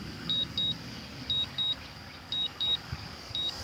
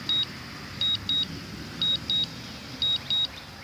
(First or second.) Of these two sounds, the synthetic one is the first